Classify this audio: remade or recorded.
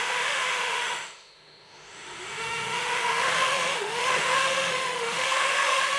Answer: remade